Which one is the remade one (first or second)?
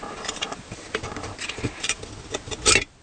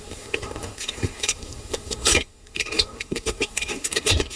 second